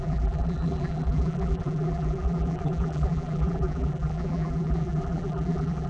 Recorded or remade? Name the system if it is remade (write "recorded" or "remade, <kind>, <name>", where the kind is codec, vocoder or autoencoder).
remade, vocoder, BigVGAN v2